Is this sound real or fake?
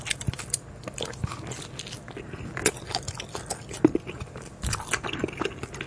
real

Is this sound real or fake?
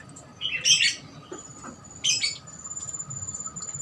real